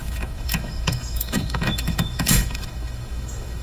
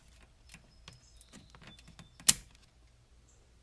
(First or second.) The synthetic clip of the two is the first